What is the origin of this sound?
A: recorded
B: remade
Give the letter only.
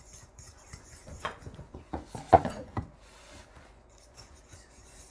B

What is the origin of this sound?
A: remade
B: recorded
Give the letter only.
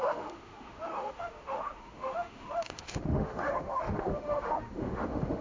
A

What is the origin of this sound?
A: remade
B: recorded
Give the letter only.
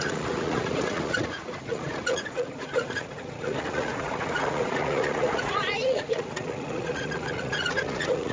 A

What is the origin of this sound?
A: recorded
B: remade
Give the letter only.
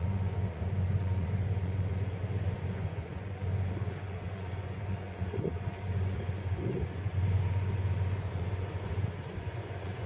B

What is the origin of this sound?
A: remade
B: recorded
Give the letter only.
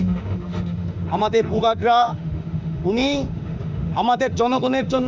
A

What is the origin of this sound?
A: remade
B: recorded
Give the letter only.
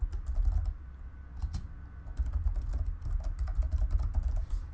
B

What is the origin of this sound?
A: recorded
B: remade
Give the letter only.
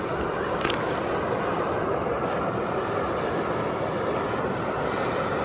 A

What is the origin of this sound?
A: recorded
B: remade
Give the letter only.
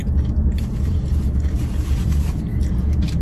B